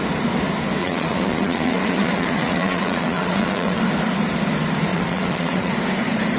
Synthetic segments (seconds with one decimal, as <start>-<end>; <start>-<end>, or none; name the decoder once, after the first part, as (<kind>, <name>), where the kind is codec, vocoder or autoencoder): 0.8-3.8 (vocoder, Vocos); 4.9-5.7